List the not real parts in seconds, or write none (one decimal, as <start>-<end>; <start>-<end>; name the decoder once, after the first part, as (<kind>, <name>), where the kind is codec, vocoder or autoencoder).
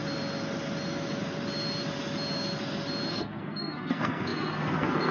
3.1-5.1 (codec, SNAC)